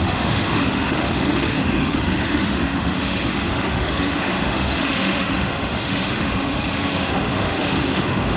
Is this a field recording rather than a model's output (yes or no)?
no